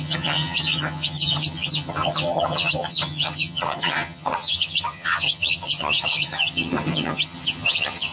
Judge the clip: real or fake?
fake